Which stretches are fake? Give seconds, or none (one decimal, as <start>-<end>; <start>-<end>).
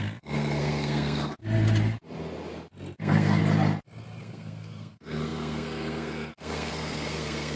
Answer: 0.0-1.4; 3.0-3.4; 4.2-7.6